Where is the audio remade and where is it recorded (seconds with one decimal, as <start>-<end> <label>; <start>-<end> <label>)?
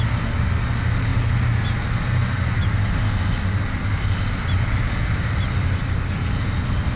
0.0-7.0 recorded